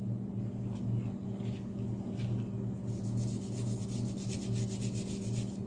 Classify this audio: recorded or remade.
recorded